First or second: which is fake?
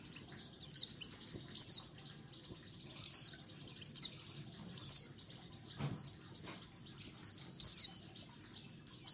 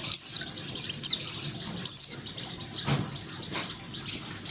second